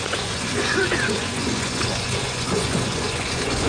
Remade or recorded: remade